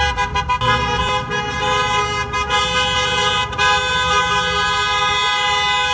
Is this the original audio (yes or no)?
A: yes